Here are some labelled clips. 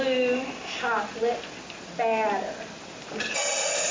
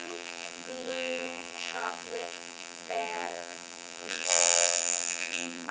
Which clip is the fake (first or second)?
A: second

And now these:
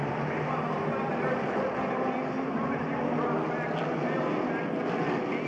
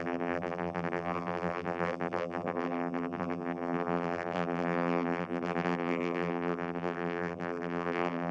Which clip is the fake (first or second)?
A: second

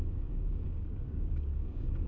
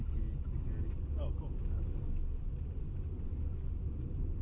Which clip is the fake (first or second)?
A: first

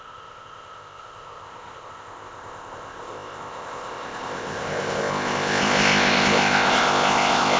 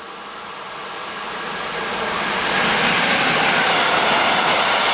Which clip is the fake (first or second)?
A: first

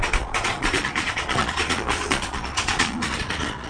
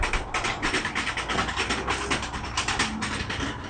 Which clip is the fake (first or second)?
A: first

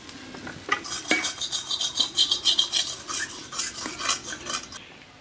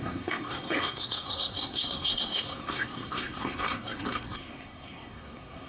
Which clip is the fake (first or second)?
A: second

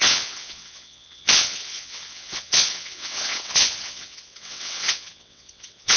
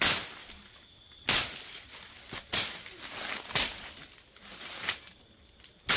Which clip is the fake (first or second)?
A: first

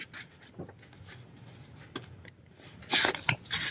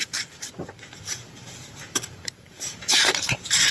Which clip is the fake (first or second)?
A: second